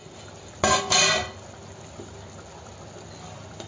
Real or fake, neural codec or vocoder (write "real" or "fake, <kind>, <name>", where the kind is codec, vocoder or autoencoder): real